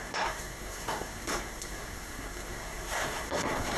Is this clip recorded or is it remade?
remade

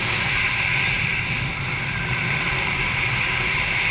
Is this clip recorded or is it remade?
recorded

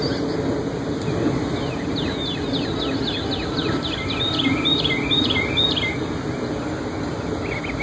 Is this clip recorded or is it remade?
recorded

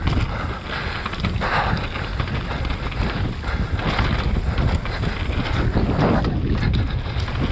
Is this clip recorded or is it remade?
recorded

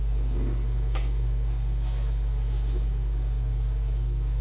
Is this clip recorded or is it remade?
remade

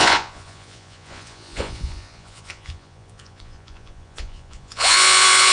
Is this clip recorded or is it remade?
remade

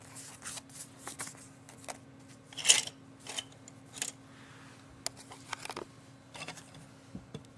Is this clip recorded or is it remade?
recorded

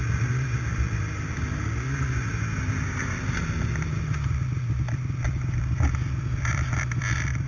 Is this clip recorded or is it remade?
recorded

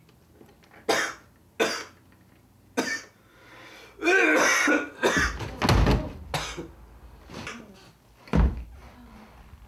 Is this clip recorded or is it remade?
recorded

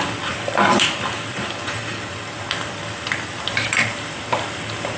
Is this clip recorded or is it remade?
remade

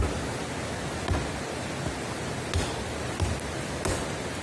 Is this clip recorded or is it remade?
recorded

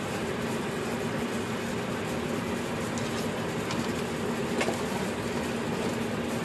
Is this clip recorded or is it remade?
recorded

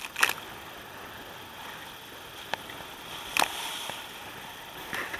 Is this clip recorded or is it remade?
recorded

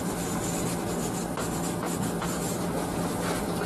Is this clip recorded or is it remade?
recorded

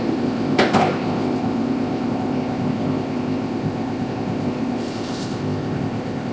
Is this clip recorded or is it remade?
remade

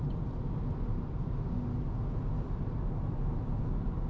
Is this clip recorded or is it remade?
recorded